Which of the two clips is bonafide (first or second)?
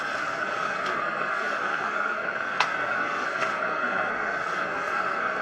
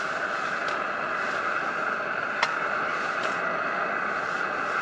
second